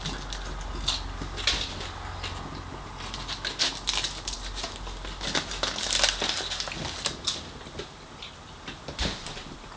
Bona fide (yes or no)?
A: yes